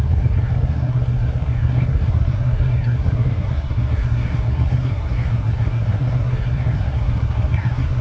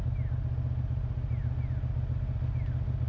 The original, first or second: second